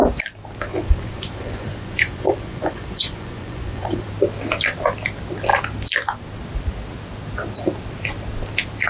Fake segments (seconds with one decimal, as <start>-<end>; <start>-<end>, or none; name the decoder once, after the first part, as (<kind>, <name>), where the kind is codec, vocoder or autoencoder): 0.7-4.1 (vocoder, Vocos)